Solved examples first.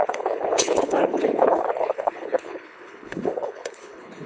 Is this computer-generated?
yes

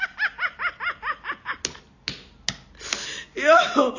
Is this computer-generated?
no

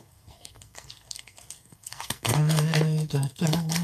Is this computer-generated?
yes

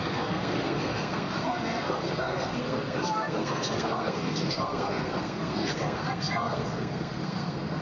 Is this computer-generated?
yes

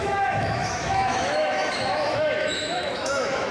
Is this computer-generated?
yes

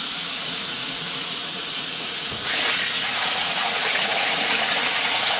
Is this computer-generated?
yes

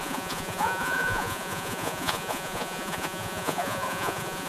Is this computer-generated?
yes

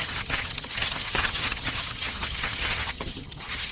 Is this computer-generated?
yes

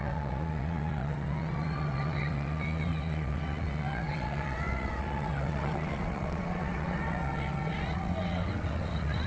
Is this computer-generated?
yes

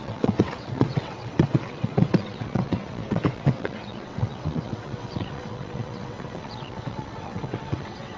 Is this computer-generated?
yes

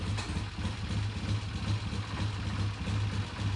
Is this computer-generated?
no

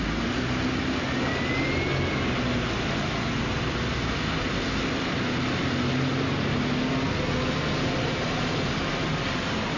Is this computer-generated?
no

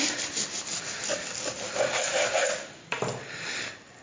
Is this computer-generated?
yes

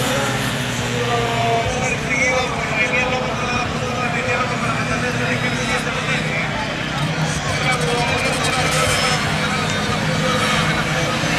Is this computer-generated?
no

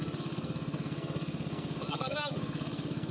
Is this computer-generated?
yes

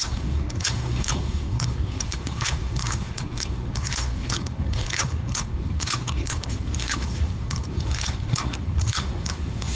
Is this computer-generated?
yes